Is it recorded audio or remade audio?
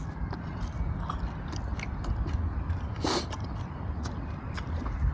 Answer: recorded